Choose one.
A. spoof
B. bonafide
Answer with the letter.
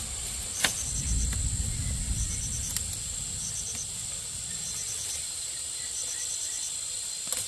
B